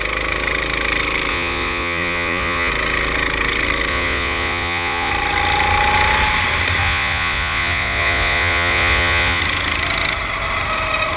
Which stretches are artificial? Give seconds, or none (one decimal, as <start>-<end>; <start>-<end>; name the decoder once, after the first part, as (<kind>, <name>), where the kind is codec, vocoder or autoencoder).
1.3-2.7 (vocoder, Vocos); 3.9-5.1; 6.8-9.4